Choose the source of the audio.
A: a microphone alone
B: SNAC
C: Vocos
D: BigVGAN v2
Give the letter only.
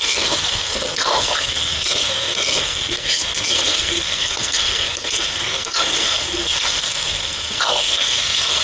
B